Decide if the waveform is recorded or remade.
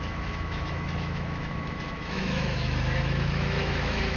remade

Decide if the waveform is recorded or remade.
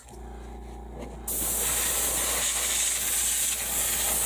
recorded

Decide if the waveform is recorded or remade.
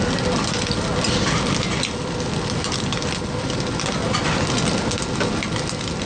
recorded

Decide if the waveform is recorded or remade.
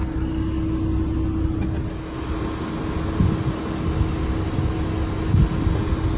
recorded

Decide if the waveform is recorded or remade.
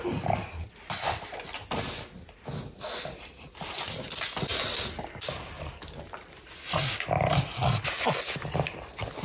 recorded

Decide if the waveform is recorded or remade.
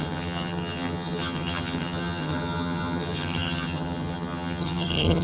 remade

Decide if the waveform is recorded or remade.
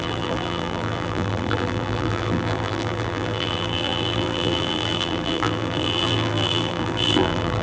remade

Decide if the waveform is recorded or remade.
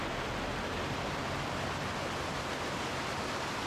recorded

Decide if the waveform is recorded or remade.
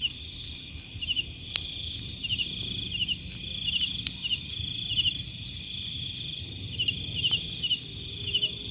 remade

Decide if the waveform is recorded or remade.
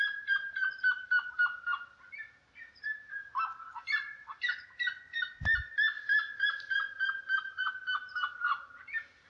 recorded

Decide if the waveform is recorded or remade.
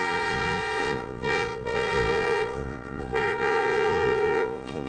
remade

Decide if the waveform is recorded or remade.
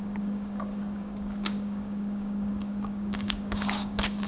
remade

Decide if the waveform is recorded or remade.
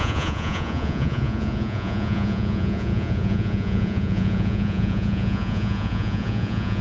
remade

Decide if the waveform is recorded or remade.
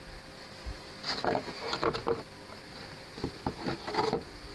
recorded